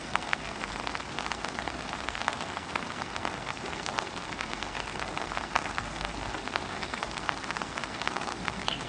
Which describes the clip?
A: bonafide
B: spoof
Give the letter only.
B